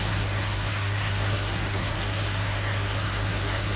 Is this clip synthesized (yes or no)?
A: yes